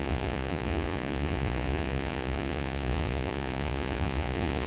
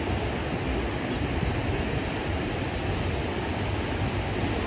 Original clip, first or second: second